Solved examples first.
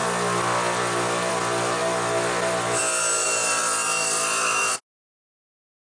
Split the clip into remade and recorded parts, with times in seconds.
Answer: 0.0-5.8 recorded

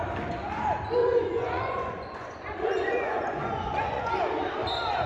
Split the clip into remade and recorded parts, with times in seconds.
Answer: 0.0-1.0 recorded; 1.0-4.1 remade; 4.1-5.1 recorded

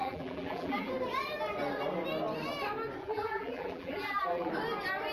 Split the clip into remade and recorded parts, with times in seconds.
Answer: 0.0-0.9 remade; 0.9-3.0 recorded; 3.0-4.5 remade; 4.5-5.1 recorded

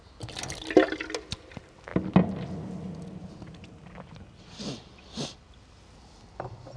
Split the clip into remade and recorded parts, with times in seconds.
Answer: 0.0-6.8 recorded

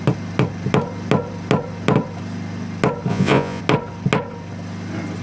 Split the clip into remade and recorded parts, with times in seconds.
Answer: 0.0-3.1 recorded; 3.1-3.6 remade; 3.6-5.2 recorded

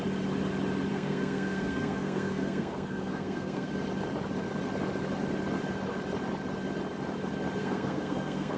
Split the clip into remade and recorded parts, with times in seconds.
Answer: 0.0-0.9 recorded; 0.9-3.7 remade; 3.7-7.6 recorded; 7.6-8.6 remade

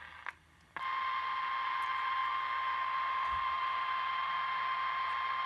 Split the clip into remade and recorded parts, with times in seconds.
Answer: 0.0-5.5 recorded

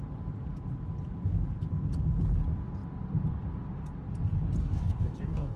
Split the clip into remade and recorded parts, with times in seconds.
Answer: 0.0-4.6 recorded; 4.6-5.6 remade